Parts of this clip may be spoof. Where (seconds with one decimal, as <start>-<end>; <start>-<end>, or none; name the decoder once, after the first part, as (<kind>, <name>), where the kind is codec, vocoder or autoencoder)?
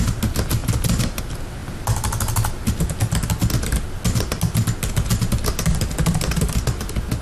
0.6-1.2 (vocoder, BigVGAN v2)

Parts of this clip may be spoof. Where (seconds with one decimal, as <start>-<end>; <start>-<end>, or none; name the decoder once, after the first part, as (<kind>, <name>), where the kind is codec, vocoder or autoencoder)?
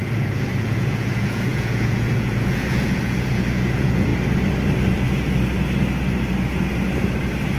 0.0-4.1 (vocoder, Vocos)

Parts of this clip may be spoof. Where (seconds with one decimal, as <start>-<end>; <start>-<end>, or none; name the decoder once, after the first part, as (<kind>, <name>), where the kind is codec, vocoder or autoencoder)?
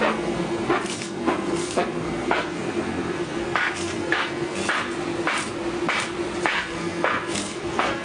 0.0-4.6 (codec, SNAC); 6.4-8.0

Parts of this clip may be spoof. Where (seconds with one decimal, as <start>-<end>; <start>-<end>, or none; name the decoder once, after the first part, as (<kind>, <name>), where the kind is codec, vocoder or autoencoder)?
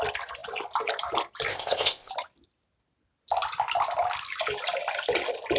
1.5-2.1 (codec, ZipCodec)